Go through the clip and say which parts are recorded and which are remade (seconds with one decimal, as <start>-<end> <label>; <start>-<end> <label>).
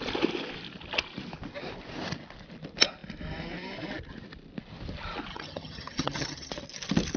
0.0-5.3 recorded; 5.3-6.5 remade; 6.5-7.2 recorded